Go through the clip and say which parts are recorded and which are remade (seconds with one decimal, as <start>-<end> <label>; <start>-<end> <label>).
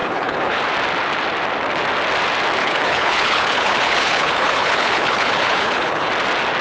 0.0-0.6 remade; 0.6-2.6 recorded; 2.6-6.1 remade; 6.1-6.6 recorded